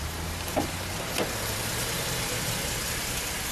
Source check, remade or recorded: recorded